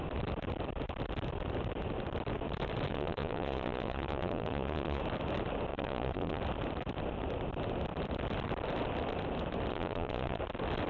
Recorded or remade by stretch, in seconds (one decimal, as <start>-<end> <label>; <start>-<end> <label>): 0.0-2.9 recorded; 2.9-5.0 remade; 5.0-5.7 recorded; 5.7-6.4 remade; 6.4-9.7 recorded; 9.7-10.4 remade; 10.4-10.9 recorded